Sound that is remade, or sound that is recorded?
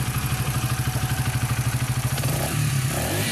remade